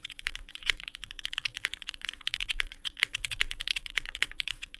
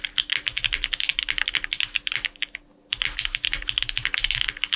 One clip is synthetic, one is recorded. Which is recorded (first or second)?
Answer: second